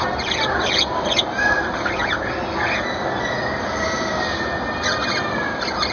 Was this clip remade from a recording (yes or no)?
no